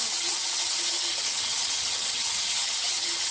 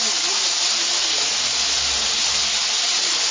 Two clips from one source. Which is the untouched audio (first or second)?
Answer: second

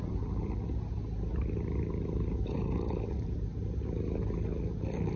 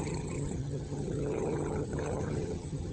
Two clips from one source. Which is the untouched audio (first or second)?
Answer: first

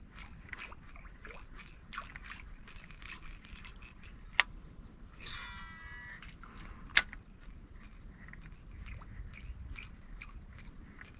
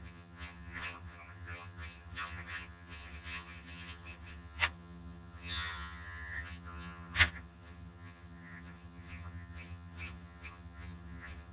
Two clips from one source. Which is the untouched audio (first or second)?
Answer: first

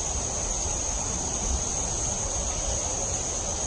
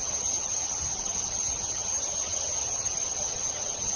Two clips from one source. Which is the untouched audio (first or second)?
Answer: first